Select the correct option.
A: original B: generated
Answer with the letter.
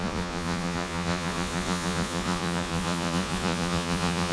B